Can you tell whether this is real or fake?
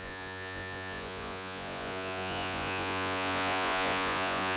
fake